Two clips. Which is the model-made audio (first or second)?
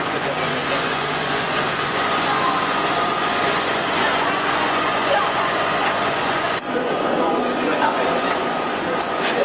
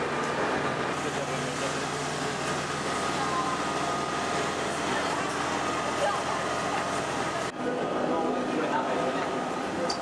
first